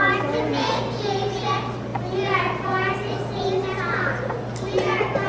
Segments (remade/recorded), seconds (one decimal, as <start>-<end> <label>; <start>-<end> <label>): 0.0-5.3 recorded